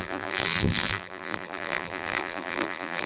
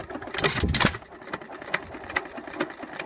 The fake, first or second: first